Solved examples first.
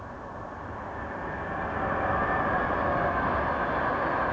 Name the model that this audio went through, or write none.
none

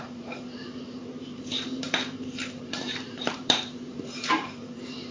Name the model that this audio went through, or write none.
vocoder, BigVGAN v2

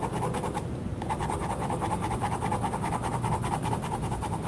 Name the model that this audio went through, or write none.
none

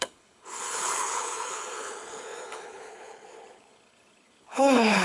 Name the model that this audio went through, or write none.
codec, HILCodec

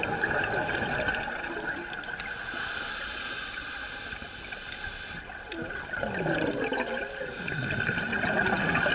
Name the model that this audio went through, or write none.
none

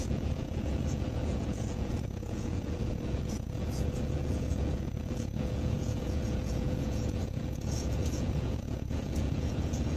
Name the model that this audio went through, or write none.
vocoder, Vocos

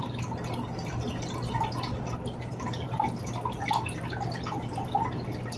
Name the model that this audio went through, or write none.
none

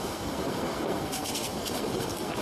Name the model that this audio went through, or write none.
codec, SNAC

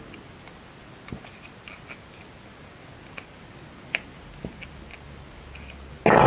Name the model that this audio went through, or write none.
none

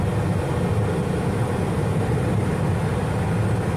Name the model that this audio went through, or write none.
none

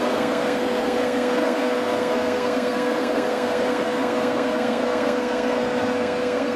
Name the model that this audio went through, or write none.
codec, SNAC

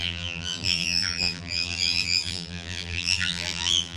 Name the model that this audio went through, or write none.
vocoder, BigVGAN v2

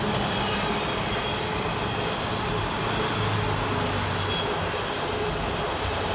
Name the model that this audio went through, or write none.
none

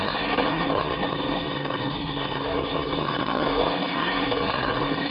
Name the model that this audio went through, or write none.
codec, SNAC